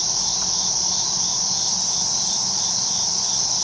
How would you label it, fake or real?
fake